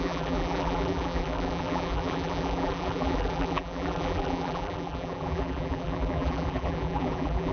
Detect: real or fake fake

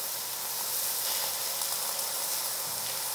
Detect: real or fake real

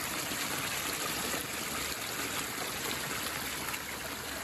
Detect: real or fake real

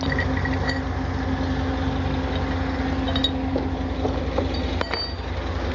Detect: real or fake real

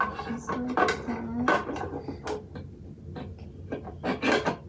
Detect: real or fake real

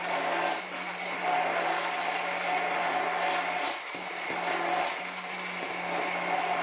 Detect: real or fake real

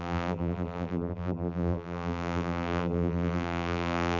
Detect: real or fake fake